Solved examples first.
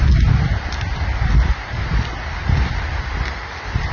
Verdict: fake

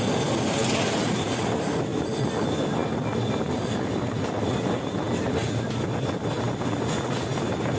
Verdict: real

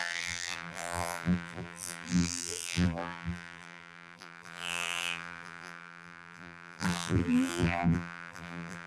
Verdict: fake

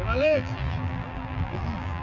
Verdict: fake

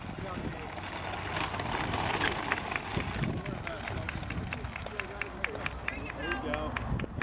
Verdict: real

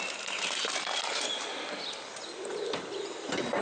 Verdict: real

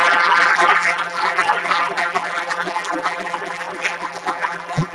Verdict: fake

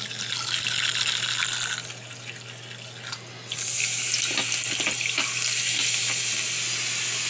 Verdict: real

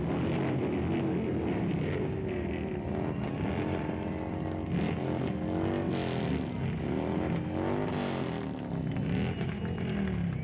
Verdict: real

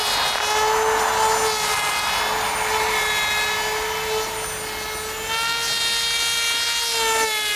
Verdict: real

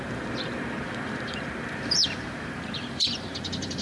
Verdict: fake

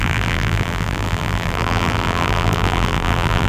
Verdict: fake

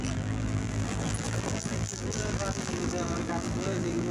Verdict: fake